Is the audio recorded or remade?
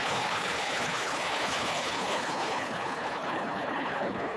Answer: remade